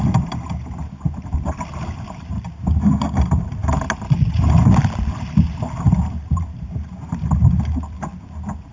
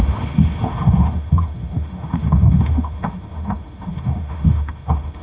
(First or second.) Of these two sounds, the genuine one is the first